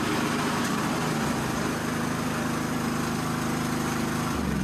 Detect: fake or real real